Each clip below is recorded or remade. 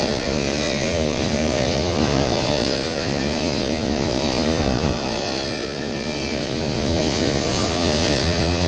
remade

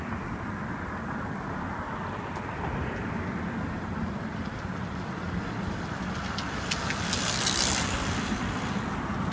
recorded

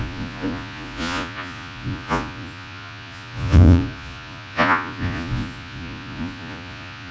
remade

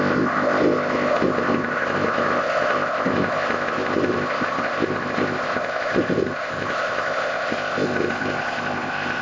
remade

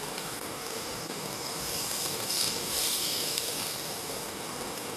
remade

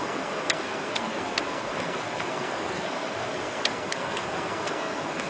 remade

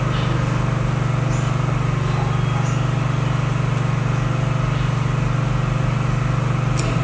recorded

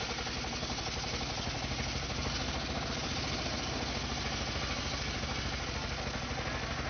recorded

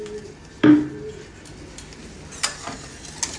recorded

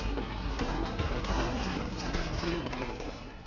remade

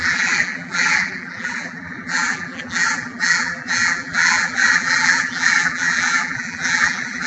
remade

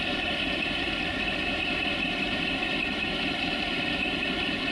remade